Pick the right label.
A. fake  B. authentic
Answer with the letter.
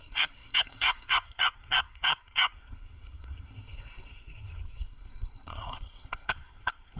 A